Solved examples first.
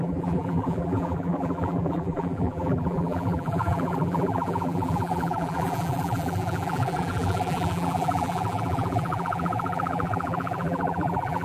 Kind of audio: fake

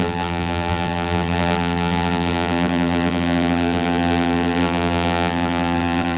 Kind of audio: fake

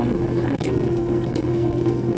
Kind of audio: fake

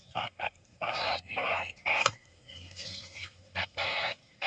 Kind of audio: fake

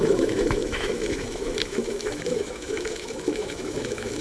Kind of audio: fake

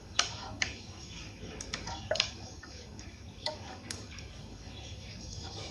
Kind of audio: fake